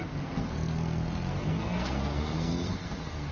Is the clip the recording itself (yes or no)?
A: no